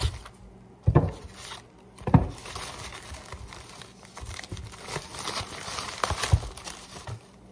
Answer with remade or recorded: recorded